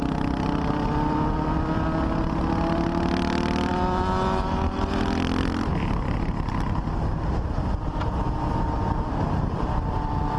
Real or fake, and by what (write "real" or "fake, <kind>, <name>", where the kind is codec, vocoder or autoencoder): real